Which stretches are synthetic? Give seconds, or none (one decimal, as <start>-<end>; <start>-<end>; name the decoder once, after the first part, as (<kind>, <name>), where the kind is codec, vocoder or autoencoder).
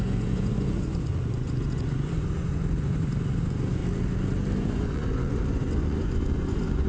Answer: 0.0-3.8 (vocoder, Vocos); 4.6-6.9